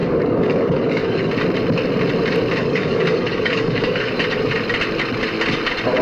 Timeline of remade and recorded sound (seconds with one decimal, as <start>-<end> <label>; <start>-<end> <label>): 0.0-1.3 remade; 1.3-2.6 recorded; 2.6-4.1 remade; 4.1-6.0 recorded